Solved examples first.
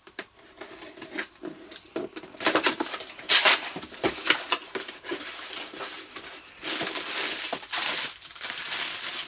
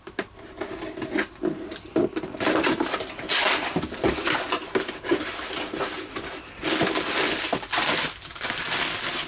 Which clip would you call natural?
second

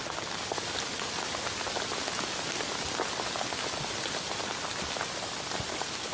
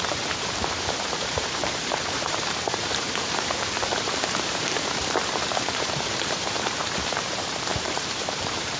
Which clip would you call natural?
first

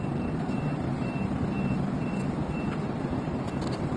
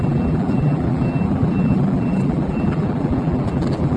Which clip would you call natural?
first